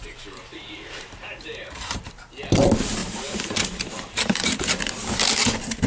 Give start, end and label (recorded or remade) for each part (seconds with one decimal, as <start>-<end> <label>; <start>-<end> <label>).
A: 0.0-0.5 recorded; 0.5-2.1 remade; 2.1-3.0 recorded; 3.0-4.9 remade; 4.9-5.9 recorded